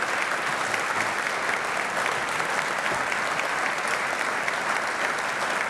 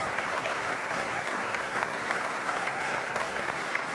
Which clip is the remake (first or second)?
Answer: second